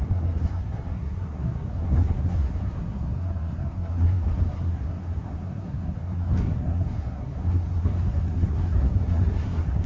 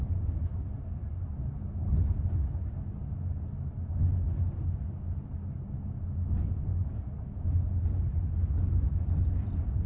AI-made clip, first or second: first